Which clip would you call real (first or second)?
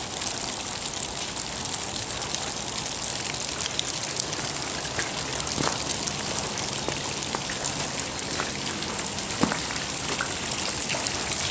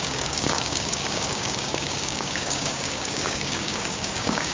first